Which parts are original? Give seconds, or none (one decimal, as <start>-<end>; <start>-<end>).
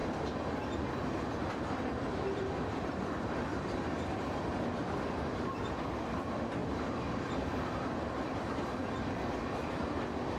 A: 0.0-2.9